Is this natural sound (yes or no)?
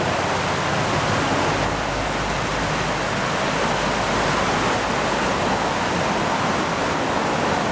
yes